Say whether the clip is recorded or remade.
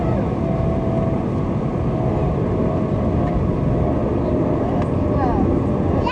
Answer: recorded